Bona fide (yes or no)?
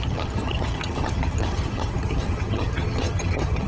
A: no